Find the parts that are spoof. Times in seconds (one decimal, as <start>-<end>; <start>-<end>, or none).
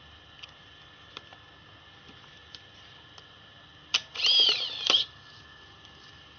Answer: 2.3-6.4